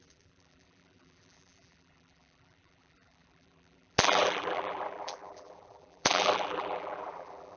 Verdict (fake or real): fake